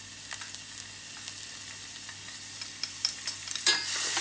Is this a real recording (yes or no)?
yes